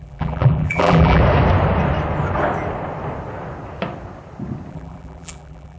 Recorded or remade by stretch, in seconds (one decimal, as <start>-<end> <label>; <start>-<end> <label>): 0.0-1.2 remade; 1.2-4.7 recorded; 4.7-5.8 remade